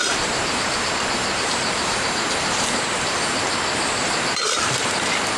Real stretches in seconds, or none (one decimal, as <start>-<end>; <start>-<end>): 3.2-4.0; 4.9-5.4